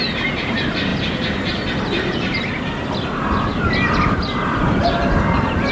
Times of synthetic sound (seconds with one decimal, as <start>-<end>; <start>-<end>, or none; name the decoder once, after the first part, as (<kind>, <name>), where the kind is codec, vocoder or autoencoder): none